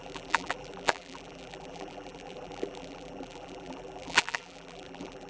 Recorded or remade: remade